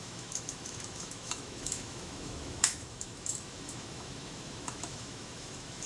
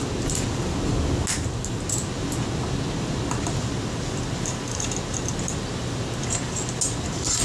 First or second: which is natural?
second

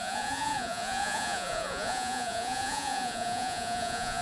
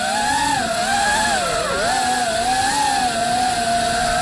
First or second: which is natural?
second